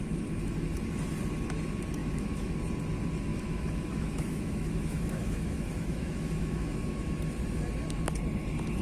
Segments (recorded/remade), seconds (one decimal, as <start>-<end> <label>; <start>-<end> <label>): 0.0-2.0 recorded; 2.0-2.6 remade; 2.6-3.3 recorded; 3.3-7.1 remade; 7.1-8.8 recorded